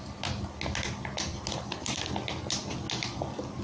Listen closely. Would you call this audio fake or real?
real